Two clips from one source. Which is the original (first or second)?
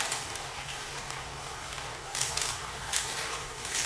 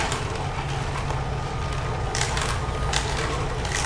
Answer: second